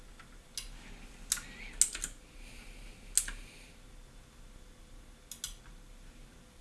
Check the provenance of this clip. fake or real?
real